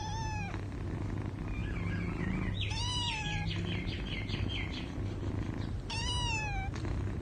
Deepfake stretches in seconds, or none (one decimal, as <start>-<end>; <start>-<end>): none